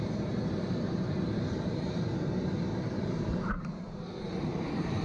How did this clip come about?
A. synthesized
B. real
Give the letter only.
A